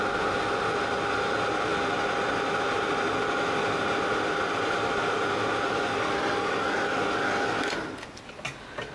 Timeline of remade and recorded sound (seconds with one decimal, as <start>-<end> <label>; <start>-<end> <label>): 0.0-8.9 recorded